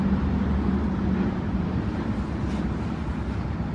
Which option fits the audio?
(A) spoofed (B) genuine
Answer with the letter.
B